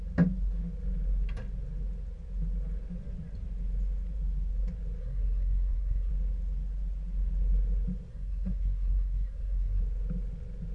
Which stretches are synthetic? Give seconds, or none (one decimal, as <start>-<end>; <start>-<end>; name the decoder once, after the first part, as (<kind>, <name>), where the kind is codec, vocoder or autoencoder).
5.0-6.1 (codec, SNAC); 8.1-9.8